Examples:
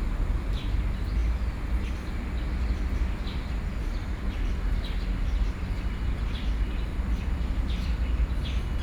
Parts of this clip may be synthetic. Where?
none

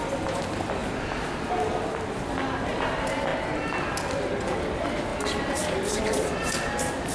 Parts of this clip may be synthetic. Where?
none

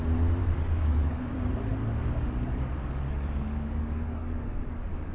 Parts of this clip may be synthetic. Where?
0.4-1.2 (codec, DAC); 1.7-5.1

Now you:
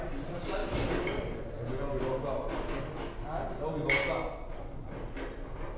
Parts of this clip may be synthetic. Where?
none

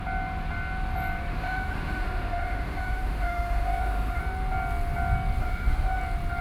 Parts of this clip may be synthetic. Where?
1.3-4.2 (autoencoder, DAC-VAE); 5.4-6.0

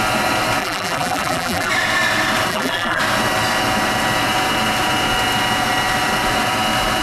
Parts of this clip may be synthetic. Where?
0.6-1.7 (vocoder, BigVGAN v2); 2.5-3.0

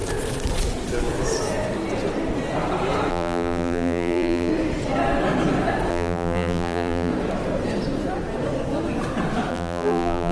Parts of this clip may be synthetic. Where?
3.1-4.5 (vocoder, BigVGAN v2); 5.9-7.1; 9.5-10.3

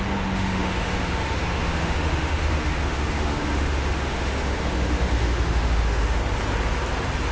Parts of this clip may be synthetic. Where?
0.0-6.2 (autoencoder, DAC-VAE)